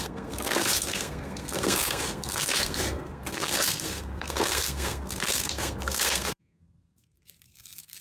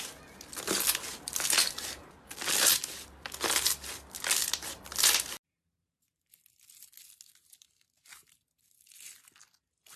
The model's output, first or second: first